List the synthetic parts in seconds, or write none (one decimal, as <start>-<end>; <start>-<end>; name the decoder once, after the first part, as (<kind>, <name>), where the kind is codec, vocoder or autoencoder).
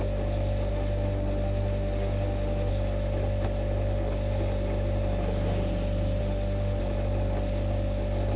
0.7-2.7 (autoencoder, DAC-VAE); 6.2-6.8